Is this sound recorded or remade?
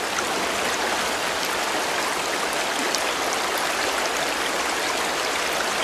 recorded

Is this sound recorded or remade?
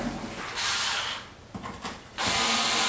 recorded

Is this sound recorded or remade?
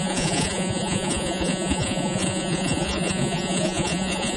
remade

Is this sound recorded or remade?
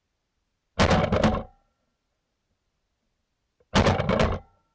recorded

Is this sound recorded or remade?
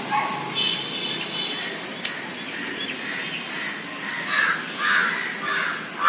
recorded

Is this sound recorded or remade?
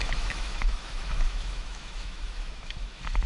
remade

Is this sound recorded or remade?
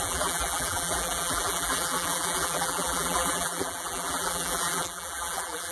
remade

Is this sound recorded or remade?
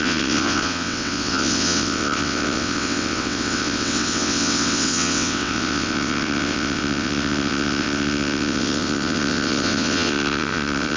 remade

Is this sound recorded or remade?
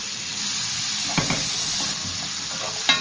recorded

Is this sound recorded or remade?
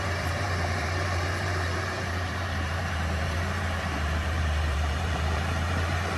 remade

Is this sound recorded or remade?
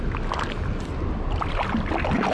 recorded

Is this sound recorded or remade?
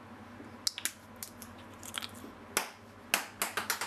recorded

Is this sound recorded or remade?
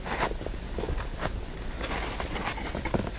recorded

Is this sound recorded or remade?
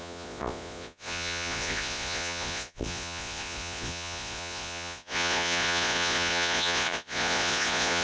remade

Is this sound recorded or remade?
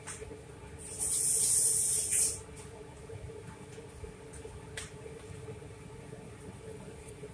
recorded